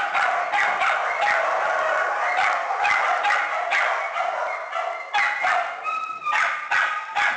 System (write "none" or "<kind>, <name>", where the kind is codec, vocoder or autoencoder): none